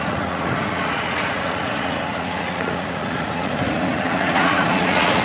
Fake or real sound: fake